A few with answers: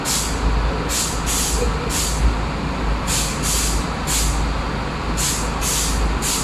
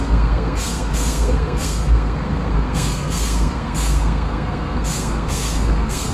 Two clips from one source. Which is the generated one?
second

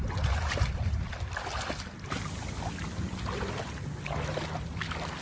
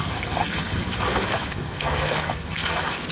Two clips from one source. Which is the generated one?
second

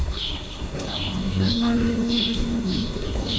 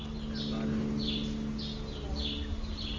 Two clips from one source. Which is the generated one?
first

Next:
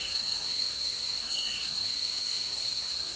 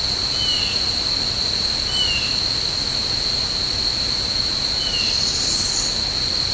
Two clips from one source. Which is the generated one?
first